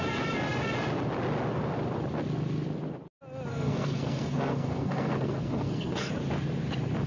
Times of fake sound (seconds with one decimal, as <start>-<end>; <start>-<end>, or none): 3.5-6.1